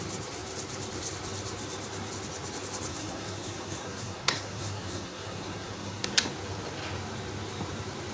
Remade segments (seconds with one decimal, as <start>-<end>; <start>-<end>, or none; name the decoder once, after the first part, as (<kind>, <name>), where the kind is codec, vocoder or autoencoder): 2.9-6.3 (codec, SNAC)